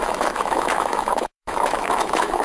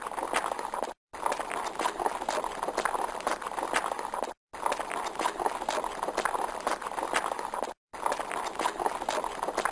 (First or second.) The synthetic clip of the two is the first